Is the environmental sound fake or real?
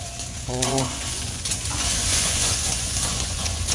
fake